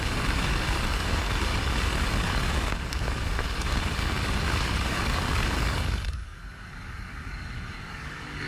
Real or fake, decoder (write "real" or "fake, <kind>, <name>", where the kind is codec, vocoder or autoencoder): fake, codec, DAC